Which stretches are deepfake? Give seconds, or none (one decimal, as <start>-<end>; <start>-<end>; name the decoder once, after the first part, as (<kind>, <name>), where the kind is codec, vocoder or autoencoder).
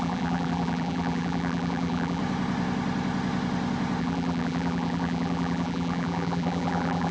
0.0-2.2 (vocoder, BigVGAN v2); 4.0-7.1